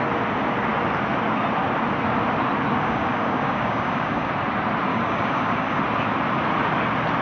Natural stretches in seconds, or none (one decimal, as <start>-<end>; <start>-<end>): 0.0-2.8; 4.3-4.9; 5.8-7.2